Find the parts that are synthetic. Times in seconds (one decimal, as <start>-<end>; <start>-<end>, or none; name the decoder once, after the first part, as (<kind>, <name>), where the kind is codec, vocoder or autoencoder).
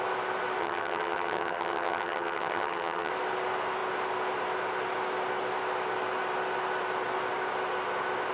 0.6-3.1 (vocoder, HiFi-GAN)